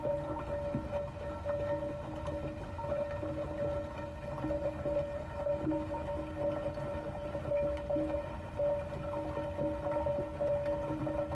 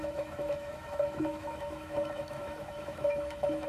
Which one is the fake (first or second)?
second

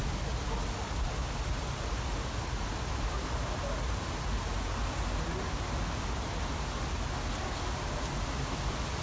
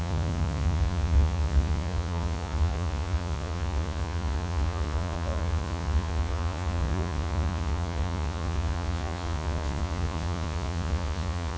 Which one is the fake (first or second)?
second